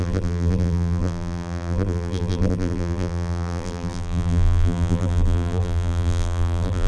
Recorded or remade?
remade